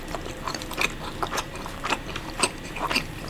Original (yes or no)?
no